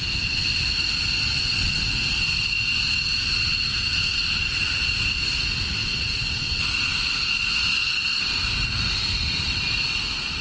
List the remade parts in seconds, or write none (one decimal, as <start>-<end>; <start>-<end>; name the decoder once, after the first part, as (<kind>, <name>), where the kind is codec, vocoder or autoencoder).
1.3-1.8 (vocoder, WaveNeXt); 3.7-4.2; 5.8-6.6